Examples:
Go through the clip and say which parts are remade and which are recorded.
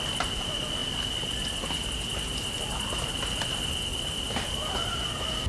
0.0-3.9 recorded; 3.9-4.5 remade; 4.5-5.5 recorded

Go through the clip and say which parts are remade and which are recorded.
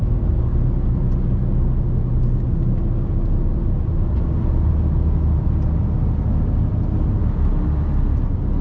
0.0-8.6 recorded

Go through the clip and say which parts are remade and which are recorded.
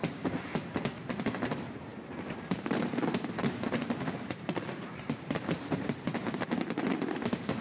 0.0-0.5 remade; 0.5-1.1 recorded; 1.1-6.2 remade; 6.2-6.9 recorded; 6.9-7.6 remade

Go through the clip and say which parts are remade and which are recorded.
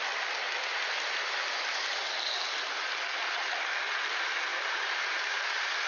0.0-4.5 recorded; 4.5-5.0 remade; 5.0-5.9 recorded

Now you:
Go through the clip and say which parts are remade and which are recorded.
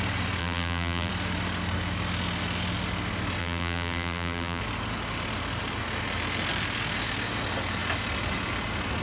0.0-0.4 recorded; 0.4-1.1 remade; 1.1-3.4 recorded; 3.4-4.6 remade; 4.6-9.0 recorded